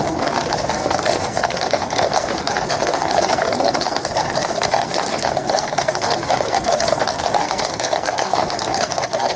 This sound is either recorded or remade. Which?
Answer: remade